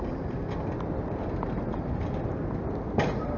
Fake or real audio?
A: real